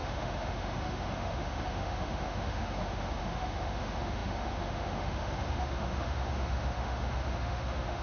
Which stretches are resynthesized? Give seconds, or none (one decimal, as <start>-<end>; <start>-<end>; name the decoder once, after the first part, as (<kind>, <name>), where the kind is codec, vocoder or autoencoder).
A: 0.0-8.0 (autoencoder, DAC-VAE)